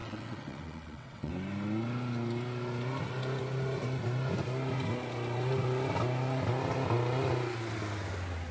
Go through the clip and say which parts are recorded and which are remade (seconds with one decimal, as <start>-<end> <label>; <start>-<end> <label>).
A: 0.0-1.3 remade; 1.3-8.5 recorded